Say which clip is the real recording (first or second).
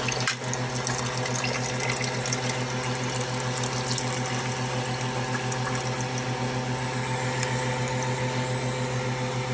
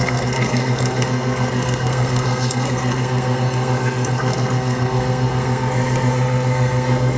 first